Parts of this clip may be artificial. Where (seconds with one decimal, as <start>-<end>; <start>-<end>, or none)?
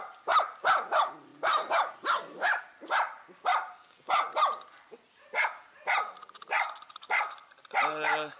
1.3-2.6